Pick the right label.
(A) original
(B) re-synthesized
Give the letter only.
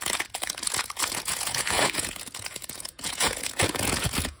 B